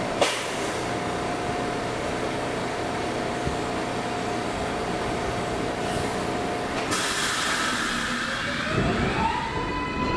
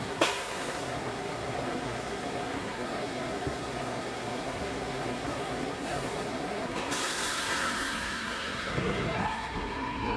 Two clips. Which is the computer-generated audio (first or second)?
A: second